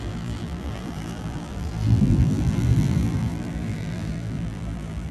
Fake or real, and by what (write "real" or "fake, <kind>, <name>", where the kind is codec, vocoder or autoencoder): fake, vocoder, BigVGAN v2